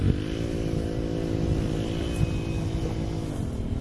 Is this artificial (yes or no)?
no